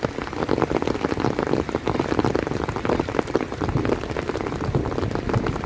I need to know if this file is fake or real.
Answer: real